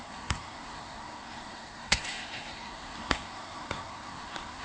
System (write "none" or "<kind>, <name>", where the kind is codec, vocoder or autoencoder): codec, SNAC